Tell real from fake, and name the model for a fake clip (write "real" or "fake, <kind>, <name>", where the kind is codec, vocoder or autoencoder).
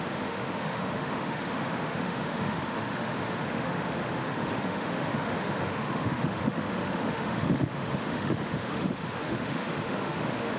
fake, autoencoder, DAC-VAE